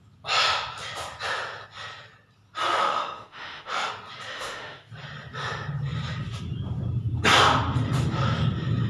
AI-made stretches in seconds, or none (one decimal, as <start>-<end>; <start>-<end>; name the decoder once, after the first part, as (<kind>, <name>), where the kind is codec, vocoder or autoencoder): 2.8-3.9 (autoencoder, DAC-VAE); 4.3-4.9